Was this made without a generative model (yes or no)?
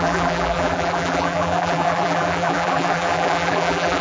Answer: no